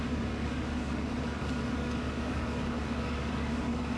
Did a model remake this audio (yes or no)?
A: yes